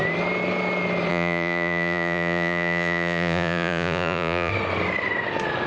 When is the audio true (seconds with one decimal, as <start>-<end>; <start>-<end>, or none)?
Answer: 0.0-1.1; 4.5-5.7